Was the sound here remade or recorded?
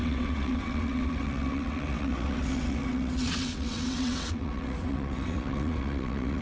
remade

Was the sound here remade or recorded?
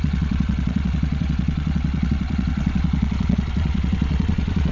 remade